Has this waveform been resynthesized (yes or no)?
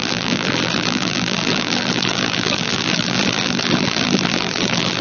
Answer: yes